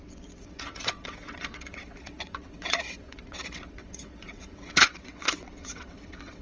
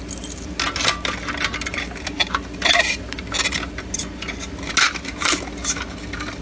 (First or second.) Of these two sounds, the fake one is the first